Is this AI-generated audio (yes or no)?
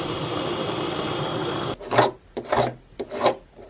no